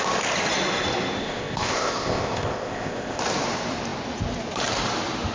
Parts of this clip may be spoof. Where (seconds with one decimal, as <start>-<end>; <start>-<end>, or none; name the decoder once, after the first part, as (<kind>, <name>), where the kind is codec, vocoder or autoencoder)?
1.2-3.2 (codec, ZipCodec)